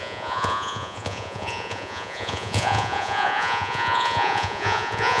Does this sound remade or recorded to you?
remade